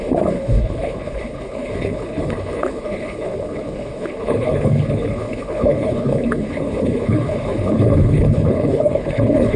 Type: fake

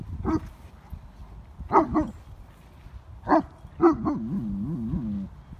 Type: real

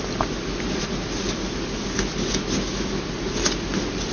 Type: real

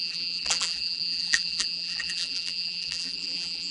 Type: fake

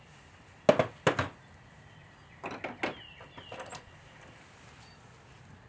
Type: real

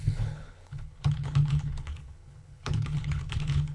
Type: fake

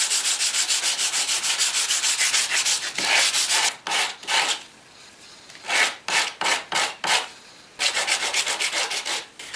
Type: real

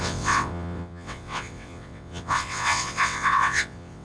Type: fake